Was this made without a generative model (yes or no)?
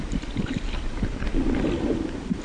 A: yes